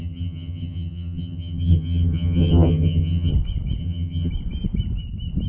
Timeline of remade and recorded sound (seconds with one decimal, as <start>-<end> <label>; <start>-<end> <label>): 0.0-3.3 remade; 3.3-3.8 recorded; 3.8-4.3 remade; 4.3-5.5 recorded